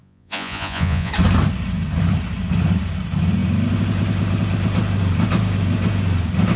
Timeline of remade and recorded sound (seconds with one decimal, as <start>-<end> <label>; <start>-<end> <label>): 0.0-1.1 remade; 1.1-6.6 recorded